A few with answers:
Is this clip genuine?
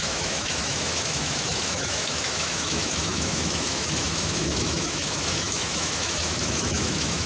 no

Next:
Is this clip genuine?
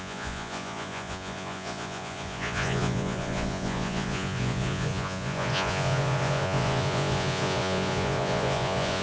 no